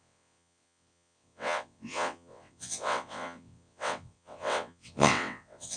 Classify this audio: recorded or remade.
remade